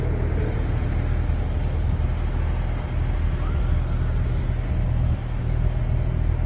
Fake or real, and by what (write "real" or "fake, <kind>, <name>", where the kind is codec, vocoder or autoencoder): real